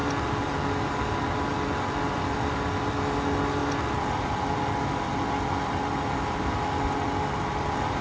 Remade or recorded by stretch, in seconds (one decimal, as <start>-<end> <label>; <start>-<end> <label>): 0.0-8.0 recorded